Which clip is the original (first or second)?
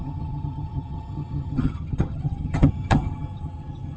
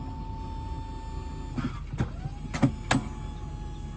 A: second